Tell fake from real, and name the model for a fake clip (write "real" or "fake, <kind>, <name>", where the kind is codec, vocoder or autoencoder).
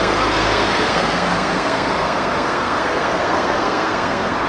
fake, codec, SNAC